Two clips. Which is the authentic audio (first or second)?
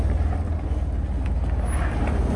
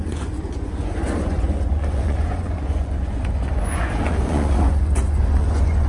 first